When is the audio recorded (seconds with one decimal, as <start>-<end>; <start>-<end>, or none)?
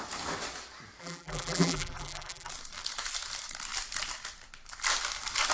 0.0-1.0; 2.5-5.5